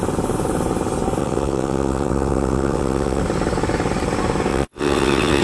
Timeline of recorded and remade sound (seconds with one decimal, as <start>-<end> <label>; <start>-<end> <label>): 0.0-1.2 recorded; 1.2-3.2 remade; 3.2-4.5 recorded; 4.5-5.4 remade